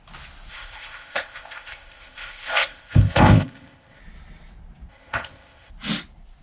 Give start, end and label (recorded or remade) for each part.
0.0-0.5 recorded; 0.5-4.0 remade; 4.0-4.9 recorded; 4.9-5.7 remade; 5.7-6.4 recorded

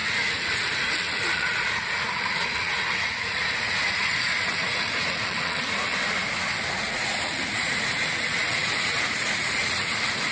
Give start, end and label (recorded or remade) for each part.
0.0-5.9 remade; 5.9-6.6 recorded; 6.6-10.3 remade

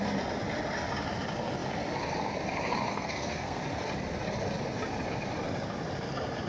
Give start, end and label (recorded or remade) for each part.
0.0-2.9 recorded; 2.9-3.6 remade; 3.6-6.5 recorded

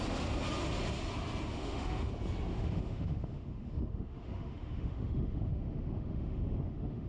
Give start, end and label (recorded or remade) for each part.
0.0-1.5 recorded; 1.5-2.1 remade; 2.1-2.5 recorded; 2.5-7.1 remade

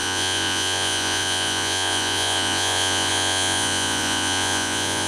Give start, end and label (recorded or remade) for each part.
0.0-5.1 remade